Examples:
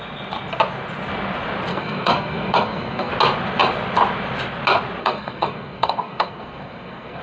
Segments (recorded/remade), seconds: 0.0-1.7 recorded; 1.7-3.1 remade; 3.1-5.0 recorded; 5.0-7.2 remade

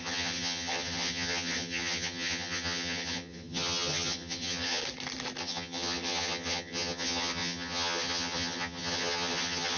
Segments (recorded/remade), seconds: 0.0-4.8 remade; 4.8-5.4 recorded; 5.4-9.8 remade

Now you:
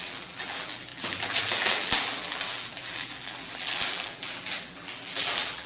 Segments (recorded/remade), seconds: 0.0-5.7 remade